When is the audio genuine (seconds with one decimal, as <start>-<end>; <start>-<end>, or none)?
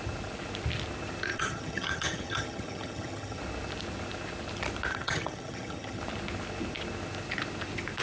0.0-1.3; 3.4-4.9; 6.0-8.0